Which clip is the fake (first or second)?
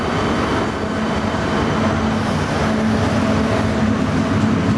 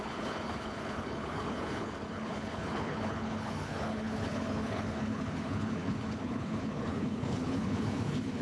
second